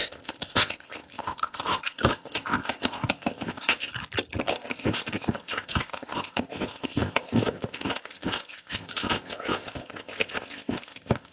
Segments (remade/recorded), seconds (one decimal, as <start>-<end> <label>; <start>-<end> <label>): 0.0-3.9 remade; 3.9-4.5 recorded; 4.5-11.3 remade